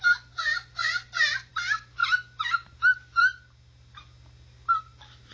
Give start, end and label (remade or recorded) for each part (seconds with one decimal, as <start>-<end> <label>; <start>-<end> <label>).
0.0-0.8 recorded; 0.8-1.5 remade; 1.5-5.3 recorded